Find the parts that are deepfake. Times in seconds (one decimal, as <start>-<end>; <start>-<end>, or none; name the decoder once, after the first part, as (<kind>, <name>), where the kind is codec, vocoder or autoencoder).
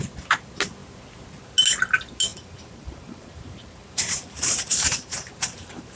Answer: 2.3-6.0 (vocoder, BigVGAN v2)